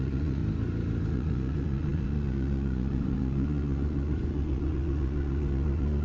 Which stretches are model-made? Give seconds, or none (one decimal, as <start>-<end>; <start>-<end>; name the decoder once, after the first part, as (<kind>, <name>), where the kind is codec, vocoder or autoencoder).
0.0-0.4 (vocoder, Vocos); 1.1-6.0

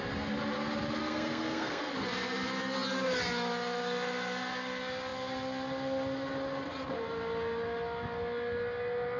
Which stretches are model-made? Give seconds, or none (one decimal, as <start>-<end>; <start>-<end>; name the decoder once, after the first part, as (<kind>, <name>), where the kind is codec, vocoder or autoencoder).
1.0-1.9 (codec, SNAC)

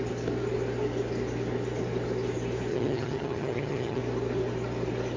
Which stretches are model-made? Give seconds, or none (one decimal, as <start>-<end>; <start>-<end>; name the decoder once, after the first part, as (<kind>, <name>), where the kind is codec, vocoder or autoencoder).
2.7-4.0 (vocoder, HiFi-GAN)

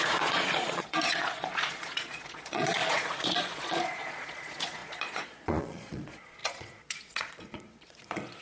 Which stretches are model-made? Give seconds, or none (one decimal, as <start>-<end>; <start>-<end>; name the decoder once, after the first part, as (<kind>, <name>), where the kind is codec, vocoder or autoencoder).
0.0-8.4 (vocoder, Vocos)

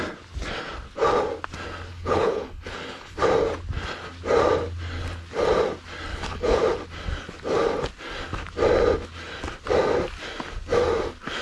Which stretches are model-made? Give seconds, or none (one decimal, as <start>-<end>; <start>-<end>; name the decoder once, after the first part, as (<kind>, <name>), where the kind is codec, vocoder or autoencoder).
1.9-3.3 (codec, HILCodec); 6.1-6.6

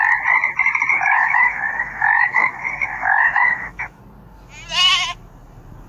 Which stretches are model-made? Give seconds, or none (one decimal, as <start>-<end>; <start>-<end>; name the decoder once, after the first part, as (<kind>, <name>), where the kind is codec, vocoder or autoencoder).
0.9-4.0 (autoencoder, DAC-VAE)

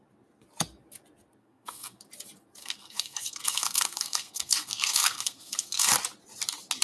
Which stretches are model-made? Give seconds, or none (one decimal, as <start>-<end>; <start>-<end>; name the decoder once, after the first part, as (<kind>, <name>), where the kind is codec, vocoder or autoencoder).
1.4-2.0 (codec, SNAC); 2.6-5.9

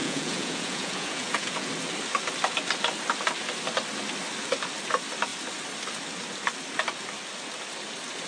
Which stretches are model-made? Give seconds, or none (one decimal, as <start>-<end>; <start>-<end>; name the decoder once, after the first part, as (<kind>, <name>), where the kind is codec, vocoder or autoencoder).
0.0-1.7 (vocoder, Vocos)